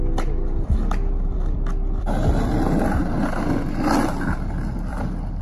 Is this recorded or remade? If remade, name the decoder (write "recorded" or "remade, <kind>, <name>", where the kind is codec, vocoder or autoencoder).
recorded